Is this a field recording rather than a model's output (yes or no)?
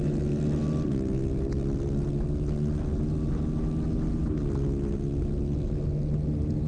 yes